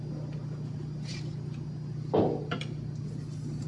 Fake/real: real